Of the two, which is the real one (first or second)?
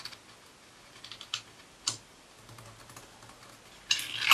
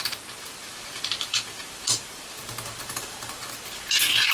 first